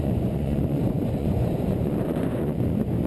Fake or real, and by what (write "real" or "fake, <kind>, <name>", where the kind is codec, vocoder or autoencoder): fake, vocoder, Vocos